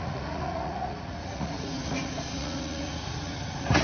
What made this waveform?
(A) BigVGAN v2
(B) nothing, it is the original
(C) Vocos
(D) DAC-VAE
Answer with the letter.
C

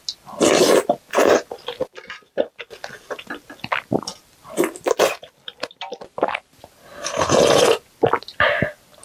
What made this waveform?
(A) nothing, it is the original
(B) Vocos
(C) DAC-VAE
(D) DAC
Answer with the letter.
A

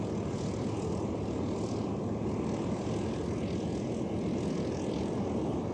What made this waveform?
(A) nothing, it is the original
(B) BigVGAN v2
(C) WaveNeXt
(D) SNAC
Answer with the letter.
A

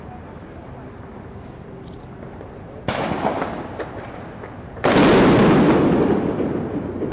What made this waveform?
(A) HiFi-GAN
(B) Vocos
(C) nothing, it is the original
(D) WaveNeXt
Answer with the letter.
C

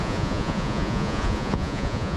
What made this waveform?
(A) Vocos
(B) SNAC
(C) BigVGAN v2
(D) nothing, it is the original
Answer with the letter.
A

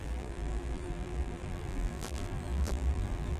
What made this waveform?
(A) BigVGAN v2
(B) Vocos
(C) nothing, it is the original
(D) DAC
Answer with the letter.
A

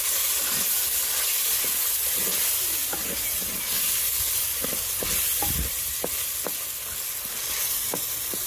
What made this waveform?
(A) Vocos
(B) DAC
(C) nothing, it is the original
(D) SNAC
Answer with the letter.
C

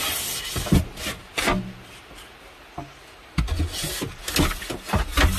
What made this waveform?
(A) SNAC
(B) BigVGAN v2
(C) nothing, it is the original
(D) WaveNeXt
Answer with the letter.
C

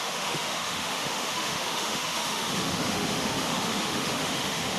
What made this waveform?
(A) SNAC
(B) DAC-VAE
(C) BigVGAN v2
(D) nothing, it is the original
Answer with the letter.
B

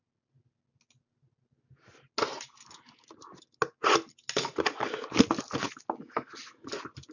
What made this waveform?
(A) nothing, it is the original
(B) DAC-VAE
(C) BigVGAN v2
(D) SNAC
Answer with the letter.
A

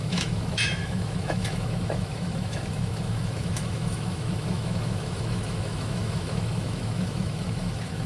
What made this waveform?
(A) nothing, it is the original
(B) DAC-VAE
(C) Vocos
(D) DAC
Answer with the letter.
B